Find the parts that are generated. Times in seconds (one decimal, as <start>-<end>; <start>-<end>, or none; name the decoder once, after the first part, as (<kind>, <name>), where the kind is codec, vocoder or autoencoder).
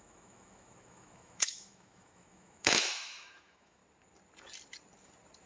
0.0-3.8 (autoencoder, DAC-VAE)